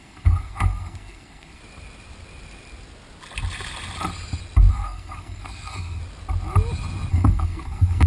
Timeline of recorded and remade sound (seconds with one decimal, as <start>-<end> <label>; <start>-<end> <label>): 0.0-1.6 remade; 1.6-4.7 recorded; 4.7-6.0 remade; 6.0-7.1 recorded; 7.1-8.1 remade